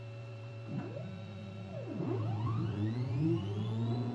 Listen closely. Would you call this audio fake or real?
fake